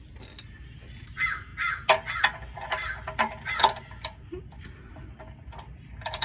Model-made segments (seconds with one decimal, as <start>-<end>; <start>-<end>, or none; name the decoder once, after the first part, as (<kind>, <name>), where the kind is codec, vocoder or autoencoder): 0.0-1.5 (vocoder, BigVGAN v2); 3.8-6.2